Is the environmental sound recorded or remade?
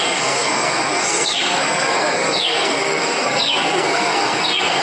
remade